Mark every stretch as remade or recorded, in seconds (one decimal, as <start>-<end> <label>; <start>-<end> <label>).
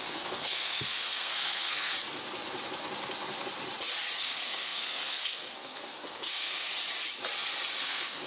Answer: 0.0-1.9 remade; 1.9-4.2 recorded; 4.2-6.7 remade; 6.7-7.8 recorded; 7.8-8.3 remade